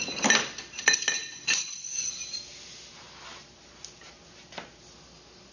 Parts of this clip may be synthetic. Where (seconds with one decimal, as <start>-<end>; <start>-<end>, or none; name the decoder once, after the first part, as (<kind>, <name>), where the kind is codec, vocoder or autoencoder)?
none